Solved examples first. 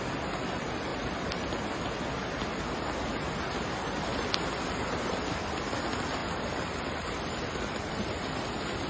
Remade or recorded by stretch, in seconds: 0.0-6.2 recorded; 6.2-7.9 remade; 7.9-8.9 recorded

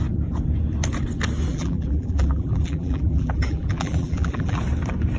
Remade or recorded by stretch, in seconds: 0.0-1.5 recorded; 1.5-4.6 remade; 4.6-5.2 recorded